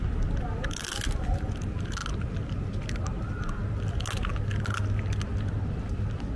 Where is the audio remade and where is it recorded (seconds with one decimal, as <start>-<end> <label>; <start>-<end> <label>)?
0.0-6.4 recorded